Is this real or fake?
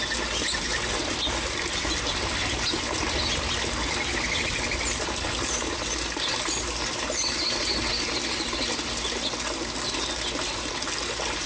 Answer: real